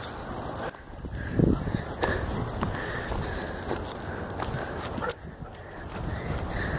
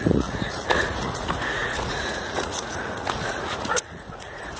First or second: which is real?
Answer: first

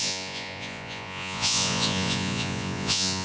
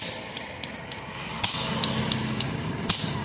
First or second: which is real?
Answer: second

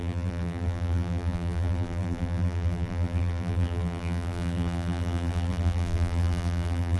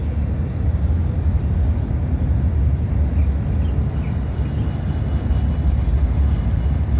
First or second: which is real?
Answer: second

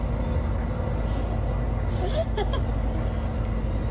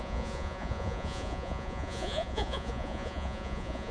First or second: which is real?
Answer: first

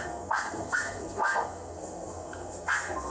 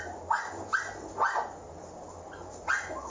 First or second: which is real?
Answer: second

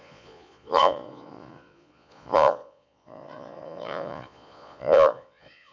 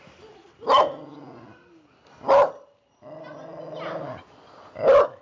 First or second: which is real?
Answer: second